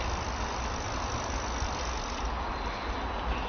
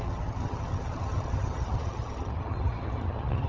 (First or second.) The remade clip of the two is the second